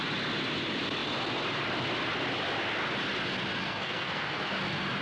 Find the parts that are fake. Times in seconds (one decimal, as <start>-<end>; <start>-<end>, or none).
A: 3.6-4.5

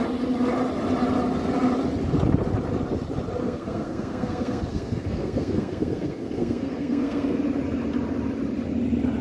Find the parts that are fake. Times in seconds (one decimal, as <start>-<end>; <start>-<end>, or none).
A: 3.4-7.4

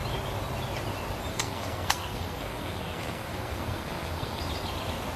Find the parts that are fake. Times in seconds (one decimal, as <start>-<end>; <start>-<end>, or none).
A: 1.3-4.4

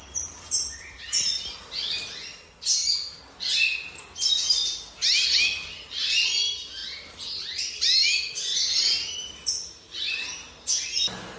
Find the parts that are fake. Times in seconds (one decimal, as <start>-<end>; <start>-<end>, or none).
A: none

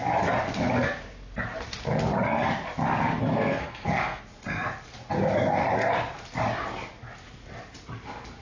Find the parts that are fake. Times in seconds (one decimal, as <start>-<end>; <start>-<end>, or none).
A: 3.3-4.2

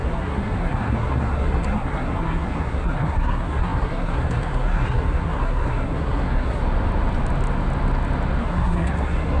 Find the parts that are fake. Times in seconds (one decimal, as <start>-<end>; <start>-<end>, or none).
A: 0.0-6.6; 8.4-9.4

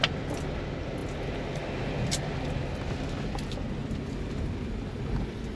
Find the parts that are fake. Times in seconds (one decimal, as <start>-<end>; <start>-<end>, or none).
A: none

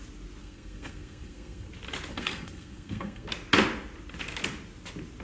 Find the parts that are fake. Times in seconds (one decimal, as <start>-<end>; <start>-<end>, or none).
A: 0.4-1.7; 2.1-3.3